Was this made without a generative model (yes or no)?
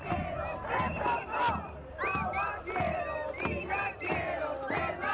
yes